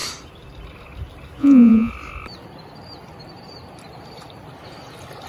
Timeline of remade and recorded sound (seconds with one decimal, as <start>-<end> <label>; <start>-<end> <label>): 0.0-1.4 recorded; 1.4-1.9 remade; 1.9-5.3 recorded